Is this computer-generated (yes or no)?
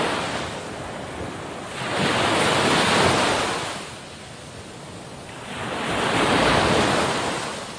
no